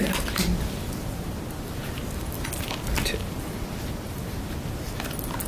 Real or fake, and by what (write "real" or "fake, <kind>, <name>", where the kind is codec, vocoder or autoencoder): real